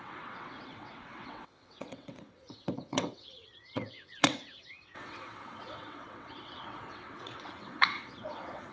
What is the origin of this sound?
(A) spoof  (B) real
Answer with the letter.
A